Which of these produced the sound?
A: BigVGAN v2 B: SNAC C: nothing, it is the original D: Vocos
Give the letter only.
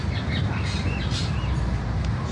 A